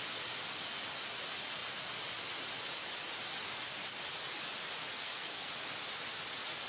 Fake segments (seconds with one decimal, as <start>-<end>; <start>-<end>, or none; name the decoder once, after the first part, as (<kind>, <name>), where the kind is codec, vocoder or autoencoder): 4.9-5.5 (codec, SNAC)